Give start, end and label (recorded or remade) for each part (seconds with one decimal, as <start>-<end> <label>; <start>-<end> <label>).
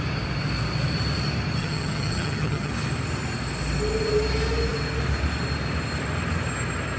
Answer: 0.0-1.6 recorded; 1.6-2.7 remade; 2.7-7.0 recorded